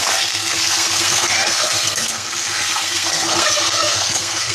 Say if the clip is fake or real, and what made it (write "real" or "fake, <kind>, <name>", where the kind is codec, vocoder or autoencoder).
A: fake, codec, SNAC